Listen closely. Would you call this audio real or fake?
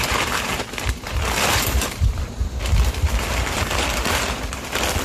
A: fake